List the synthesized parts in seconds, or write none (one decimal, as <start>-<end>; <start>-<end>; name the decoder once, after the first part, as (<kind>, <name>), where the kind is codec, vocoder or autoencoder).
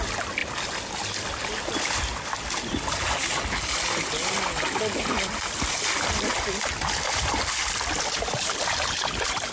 none